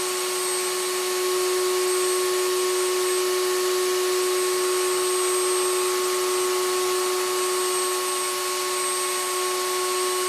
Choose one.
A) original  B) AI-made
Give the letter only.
A